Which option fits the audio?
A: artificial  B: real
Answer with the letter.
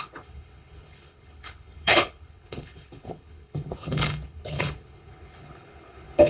A